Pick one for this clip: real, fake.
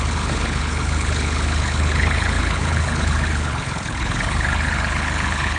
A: fake